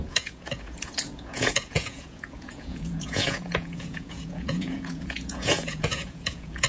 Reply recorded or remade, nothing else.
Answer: remade